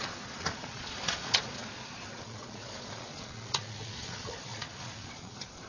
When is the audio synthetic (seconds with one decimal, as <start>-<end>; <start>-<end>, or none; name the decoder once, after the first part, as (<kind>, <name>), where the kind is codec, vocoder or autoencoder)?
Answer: 0.0-5.7 (vocoder, Vocos)